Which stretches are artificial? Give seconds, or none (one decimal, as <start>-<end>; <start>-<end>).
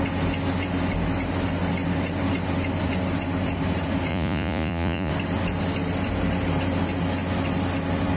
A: 4.1-5.1